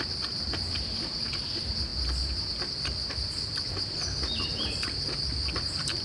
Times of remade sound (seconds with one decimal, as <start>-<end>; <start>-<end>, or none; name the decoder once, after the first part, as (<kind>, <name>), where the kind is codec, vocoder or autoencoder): none